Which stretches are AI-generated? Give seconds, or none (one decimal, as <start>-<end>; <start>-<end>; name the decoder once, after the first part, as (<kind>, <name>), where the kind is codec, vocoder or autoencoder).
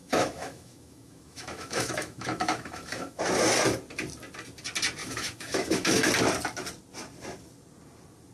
0.0-3.2 (autoencoder, DAC-VAE); 5.0-6.1